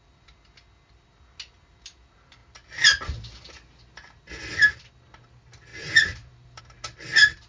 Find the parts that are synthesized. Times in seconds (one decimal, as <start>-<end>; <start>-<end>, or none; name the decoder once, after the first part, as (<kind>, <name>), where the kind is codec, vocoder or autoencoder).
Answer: 5.7-6.6 (vocoder, BigVGAN v2)